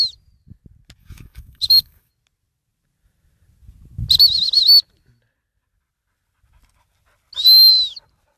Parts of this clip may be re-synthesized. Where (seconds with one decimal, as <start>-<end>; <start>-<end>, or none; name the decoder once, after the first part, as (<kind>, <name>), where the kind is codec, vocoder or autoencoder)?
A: 1.0-2.1 (codec, DAC)